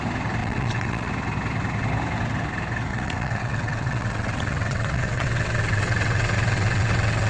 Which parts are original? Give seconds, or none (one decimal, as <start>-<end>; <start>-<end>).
0.0-0.4; 1.1-2.9